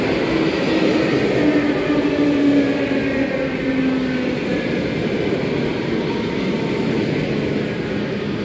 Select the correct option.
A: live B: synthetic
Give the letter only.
A